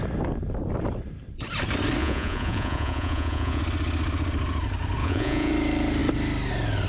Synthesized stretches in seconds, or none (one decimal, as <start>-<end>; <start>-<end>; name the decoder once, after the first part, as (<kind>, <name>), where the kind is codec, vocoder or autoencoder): 2.0-3.6 (vocoder, Vocos); 5.0-5.5